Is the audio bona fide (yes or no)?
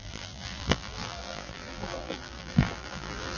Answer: no